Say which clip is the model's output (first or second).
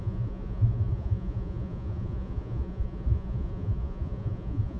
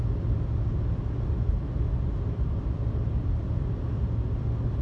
first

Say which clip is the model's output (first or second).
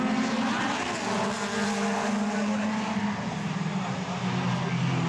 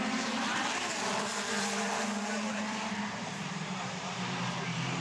second